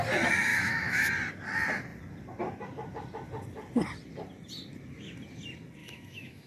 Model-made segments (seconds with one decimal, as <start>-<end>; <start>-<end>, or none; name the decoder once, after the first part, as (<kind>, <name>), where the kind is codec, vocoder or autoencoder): 0.5-1.1 (autoencoder, DAC-VAE); 5.8-6.5